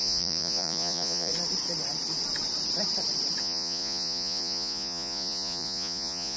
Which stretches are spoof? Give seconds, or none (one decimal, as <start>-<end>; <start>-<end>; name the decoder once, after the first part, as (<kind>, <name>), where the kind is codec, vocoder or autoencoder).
0.0-1.3 (vocoder, Vocos); 3.4-6.4